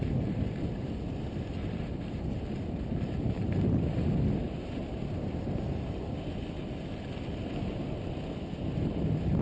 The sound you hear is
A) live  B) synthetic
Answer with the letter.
A